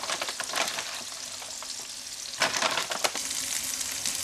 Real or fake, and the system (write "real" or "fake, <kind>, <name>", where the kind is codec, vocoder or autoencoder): real